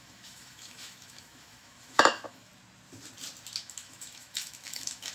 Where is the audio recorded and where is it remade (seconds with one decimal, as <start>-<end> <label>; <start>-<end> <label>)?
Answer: 0.0-2.5 remade; 2.5-3.6 recorded; 3.6-5.1 remade